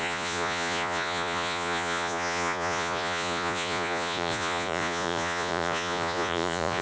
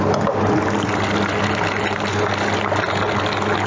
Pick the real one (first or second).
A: second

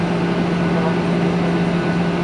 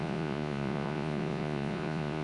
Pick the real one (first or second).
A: first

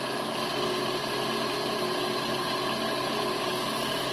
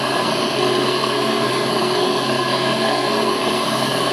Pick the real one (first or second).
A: first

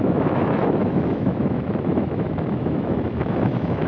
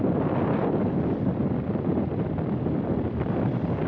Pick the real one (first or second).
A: second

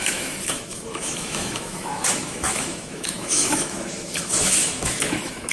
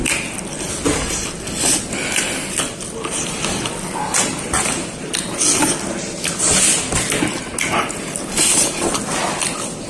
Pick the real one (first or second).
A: second